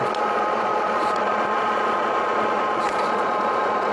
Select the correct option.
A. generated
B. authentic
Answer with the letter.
A